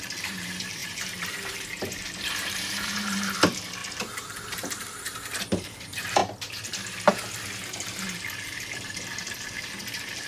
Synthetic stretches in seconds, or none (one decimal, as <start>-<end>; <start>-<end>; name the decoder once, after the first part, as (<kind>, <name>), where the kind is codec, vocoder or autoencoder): 0.0-6.2 (vocoder, BigVGAN v2); 7.1-10.3